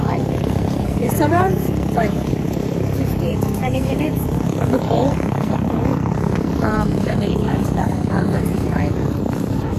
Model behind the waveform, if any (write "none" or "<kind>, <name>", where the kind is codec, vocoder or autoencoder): codec, SNAC